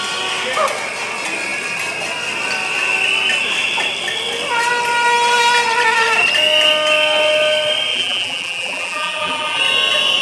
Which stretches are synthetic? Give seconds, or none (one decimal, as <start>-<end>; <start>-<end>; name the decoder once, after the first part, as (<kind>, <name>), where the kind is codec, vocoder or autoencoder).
7.9-9.6 (vocoder, BigVGAN v2)